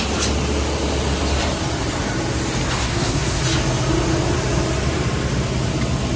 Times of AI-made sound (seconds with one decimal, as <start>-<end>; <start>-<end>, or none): 2.8-3.4